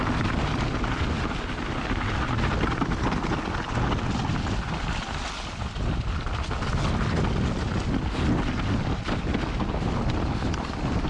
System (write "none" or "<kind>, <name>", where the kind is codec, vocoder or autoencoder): none